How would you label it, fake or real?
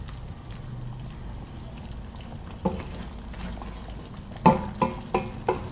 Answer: real